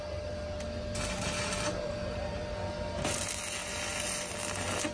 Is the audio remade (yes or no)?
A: no